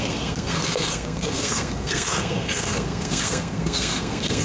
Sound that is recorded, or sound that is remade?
remade